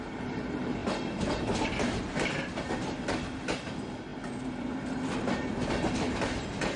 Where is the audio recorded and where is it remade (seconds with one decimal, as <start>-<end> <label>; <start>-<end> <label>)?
0.0-0.8 recorded; 0.8-1.7 remade; 1.7-6.8 recorded